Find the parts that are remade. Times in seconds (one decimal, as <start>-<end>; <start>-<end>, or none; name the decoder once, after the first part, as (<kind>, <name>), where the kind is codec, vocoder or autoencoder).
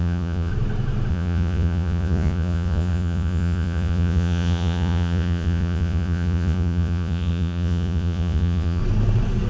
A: 0.0-0.5 (vocoder, Vocos); 1.1-8.8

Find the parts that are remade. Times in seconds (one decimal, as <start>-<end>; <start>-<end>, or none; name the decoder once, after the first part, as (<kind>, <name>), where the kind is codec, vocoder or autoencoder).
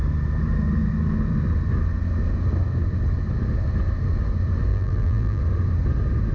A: 4.7-5.4 (vocoder, BigVGAN v2)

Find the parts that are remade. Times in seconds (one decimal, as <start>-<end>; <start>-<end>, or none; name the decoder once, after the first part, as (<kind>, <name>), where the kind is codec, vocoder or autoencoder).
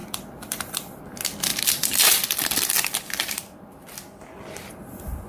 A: 0.0-1.0 (vocoder, BigVGAN v2); 1.5-4.7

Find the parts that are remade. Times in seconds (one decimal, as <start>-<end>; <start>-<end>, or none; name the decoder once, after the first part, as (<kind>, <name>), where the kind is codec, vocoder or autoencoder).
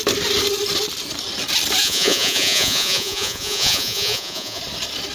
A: 1.8-4.6 (vocoder, Vocos)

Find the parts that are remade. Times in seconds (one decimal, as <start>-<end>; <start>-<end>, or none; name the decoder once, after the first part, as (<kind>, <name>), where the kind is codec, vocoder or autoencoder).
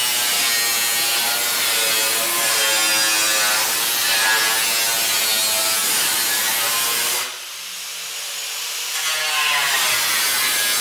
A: 5.8-6.4 (vocoder, BigVGAN v2)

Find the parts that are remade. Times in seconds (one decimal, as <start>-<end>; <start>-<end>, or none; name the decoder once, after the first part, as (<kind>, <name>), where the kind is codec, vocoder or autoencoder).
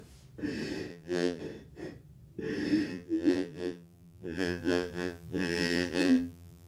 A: 0.9-1.4 (vocoder, BigVGAN v2); 2.9-6.7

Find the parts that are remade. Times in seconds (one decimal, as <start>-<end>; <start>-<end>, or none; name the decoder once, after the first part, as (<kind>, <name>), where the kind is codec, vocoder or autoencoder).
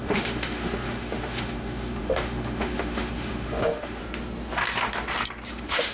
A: 0.0-4.0 (autoencoder, DAC-VAE); 5.5-5.9